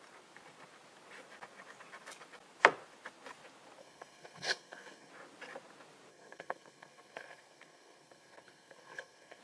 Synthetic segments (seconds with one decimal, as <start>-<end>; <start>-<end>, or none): 3.8-5.1; 6.1-9.4